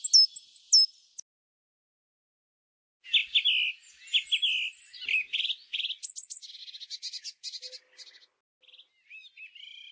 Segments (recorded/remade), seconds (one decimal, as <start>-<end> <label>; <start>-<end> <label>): 0.0-9.9 recorded